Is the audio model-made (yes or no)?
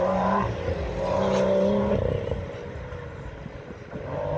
no